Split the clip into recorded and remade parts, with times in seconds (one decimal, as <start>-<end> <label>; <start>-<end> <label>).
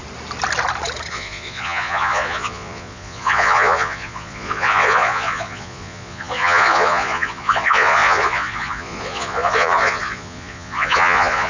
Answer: 0.0-1.1 recorded; 1.1-11.5 remade